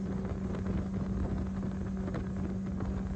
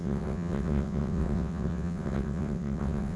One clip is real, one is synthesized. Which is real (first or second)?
first